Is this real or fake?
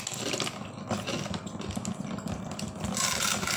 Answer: real